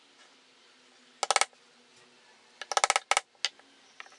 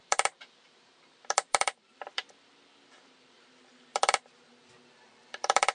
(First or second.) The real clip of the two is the first